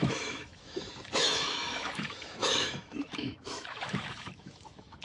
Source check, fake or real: fake